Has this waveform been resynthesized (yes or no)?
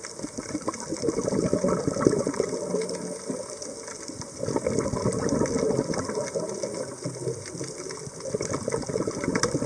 no